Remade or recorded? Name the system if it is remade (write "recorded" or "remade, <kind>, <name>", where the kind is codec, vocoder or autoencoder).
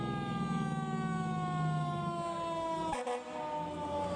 recorded